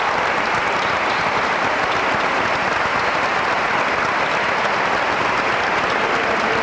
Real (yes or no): yes